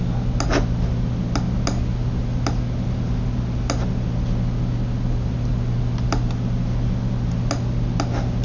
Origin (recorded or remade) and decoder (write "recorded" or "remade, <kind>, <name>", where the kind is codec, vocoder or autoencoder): recorded